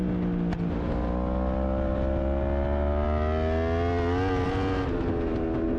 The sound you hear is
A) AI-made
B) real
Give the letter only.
B